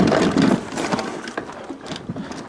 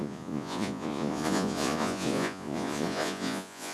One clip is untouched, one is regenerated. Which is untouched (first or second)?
first